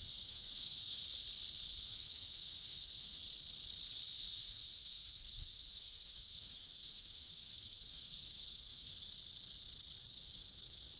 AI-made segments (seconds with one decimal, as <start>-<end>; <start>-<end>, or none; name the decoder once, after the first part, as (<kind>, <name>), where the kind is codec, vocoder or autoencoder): 0.0-1.0 (autoencoder, DAC-VAE); 1.8-3.2; 4.2-8.9; 10.0-11.0